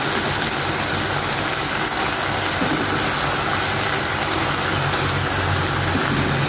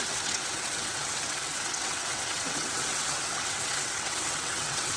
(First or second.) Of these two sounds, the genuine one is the first